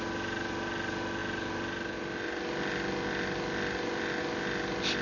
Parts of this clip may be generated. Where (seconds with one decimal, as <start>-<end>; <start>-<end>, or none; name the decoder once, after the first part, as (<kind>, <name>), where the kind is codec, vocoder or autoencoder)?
none